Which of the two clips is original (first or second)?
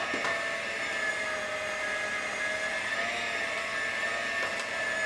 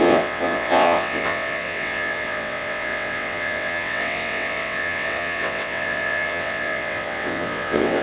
first